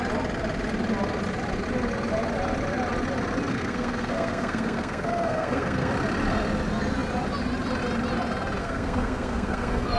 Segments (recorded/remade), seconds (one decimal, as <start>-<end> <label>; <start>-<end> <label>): 0.0-3.5 recorded; 3.5-5.9 remade; 5.9-8.6 recorded; 8.6-10.0 remade